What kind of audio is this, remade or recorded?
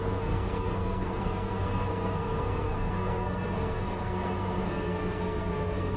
remade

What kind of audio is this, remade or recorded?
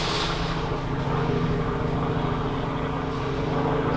recorded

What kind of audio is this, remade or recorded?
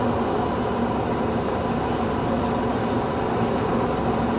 recorded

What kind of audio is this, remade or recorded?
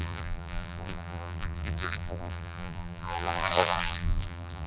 remade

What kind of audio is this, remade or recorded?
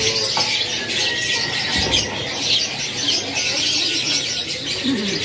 recorded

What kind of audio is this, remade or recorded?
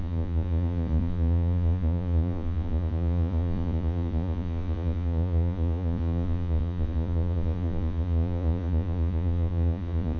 remade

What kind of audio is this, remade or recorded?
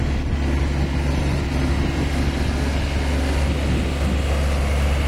recorded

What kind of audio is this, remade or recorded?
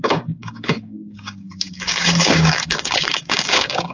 remade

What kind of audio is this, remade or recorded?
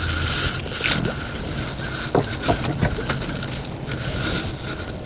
recorded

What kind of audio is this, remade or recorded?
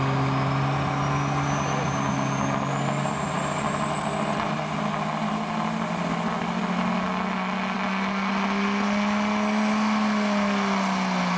recorded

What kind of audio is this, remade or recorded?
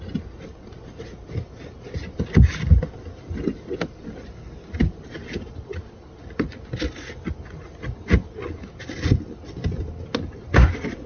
recorded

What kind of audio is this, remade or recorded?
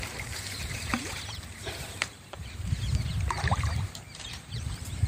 remade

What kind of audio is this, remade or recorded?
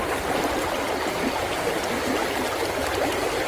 recorded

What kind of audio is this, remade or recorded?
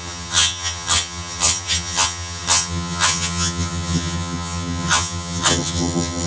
remade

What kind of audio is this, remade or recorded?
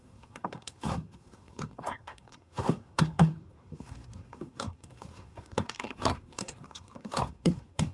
remade